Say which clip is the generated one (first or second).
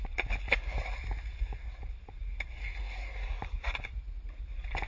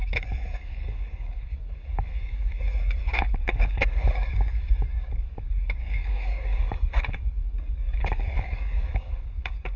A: second